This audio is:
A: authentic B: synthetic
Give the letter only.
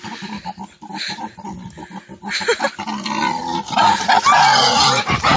A